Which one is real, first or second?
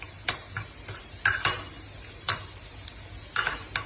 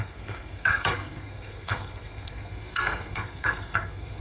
first